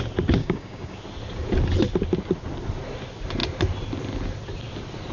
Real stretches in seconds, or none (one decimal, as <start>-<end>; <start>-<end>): 0.0-0.4; 1.0-5.1